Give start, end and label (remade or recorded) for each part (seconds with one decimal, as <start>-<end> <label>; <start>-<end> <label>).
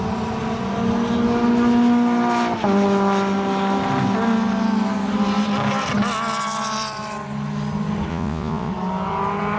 0.0-8.1 recorded; 8.1-8.7 remade; 8.7-9.6 recorded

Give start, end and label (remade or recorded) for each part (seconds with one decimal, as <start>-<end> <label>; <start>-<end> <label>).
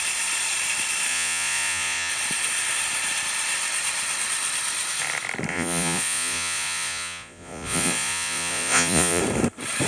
0.0-1.1 recorded; 1.1-2.1 remade; 2.1-5.5 recorded; 5.5-9.2 remade; 9.2-9.9 recorded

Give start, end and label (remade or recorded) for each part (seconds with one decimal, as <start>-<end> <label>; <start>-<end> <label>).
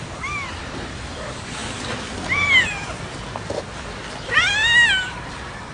0.0-5.7 recorded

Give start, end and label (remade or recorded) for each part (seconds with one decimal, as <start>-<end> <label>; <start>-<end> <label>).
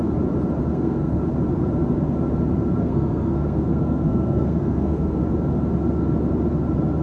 0.0-0.7 recorded; 0.7-1.2 remade; 1.2-2.8 recorded; 2.8-5.2 remade; 5.2-7.0 recorded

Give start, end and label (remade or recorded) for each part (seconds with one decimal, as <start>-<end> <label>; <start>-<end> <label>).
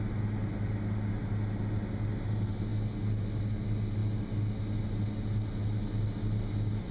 0.0-6.9 recorded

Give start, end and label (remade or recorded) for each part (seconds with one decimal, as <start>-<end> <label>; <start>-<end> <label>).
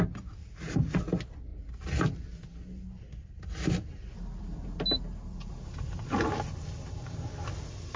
0.0-0.4 recorded; 0.4-1.0 remade; 1.0-8.0 recorded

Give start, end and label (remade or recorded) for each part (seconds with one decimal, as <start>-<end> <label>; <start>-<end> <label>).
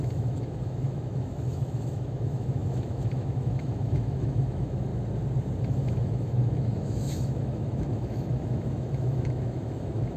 0.0-4.9 remade; 4.9-5.6 recorded; 5.6-10.2 remade